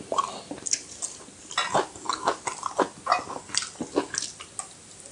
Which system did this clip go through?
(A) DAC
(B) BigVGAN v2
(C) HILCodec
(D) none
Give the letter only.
D